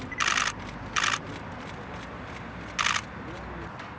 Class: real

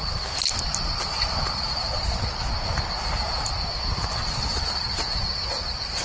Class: real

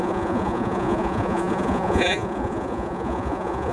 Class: fake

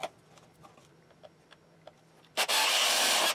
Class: real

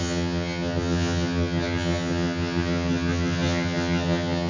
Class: fake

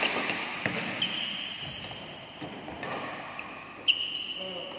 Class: real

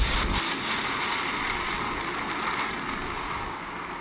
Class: real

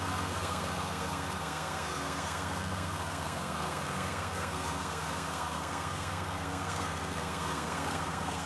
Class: fake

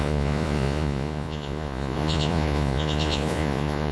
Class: fake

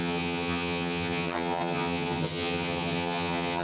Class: fake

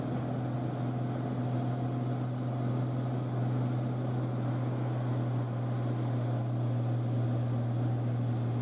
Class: real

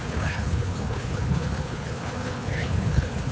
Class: fake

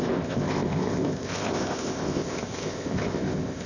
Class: fake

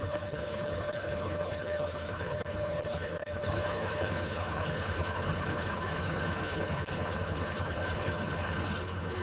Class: fake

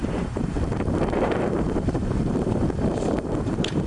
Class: fake